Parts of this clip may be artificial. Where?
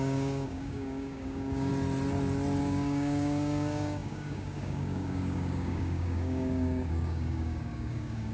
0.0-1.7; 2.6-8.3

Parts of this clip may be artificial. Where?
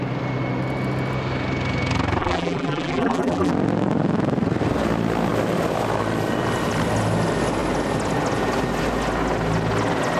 2.2-3.5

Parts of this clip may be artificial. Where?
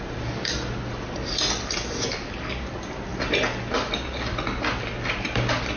none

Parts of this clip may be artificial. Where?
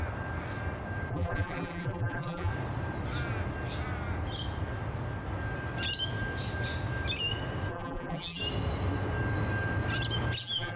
1.1-2.5; 7.7-8.4; 10.4-10.8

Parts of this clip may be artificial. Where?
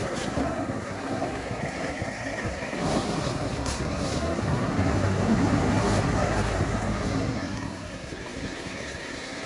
0.0-9.5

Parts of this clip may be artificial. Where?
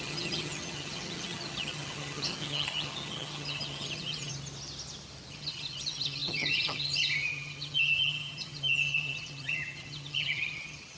0.0-4.3; 5.3-11.0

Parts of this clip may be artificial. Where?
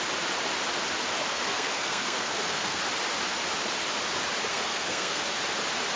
1.3-2.8; 4.5-5.2